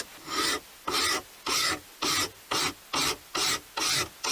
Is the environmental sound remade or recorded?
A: recorded